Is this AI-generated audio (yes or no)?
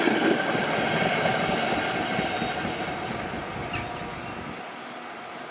no